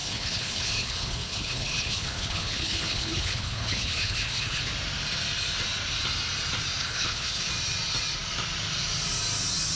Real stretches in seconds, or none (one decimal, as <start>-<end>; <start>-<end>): 4.6-6.8; 7.5-9.8